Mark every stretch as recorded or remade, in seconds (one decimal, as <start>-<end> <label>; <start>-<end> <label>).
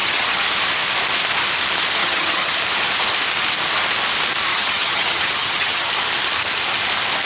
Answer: 0.0-0.5 remade; 0.5-2.0 recorded; 2.0-2.6 remade; 2.6-4.5 recorded; 4.5-5.9 remade; 5.9-7.3 recorded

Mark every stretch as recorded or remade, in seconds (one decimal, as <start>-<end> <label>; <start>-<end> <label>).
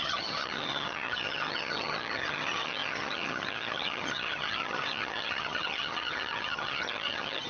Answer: 0.0-7.5 remade